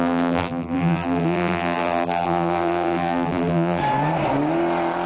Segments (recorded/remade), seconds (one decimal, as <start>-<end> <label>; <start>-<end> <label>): 0.0-3.8 remade; 3.8-5.1 recorded